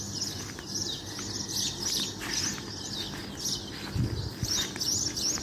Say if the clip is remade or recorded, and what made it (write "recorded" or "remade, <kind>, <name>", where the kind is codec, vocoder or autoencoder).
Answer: recorded